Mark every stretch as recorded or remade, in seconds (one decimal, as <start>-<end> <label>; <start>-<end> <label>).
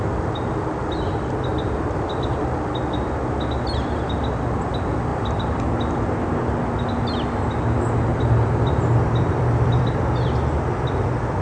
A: 0.0-1.5 recorded; 1.5-2.4 remade; 2.4-5.1 recorded; 5.1-5.6 remade; 5.6-8.1 recorded; 8.1-10.0 remade; 10.0-11.4 recorded